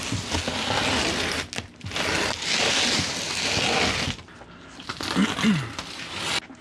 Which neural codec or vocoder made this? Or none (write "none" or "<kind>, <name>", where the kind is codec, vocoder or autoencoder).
none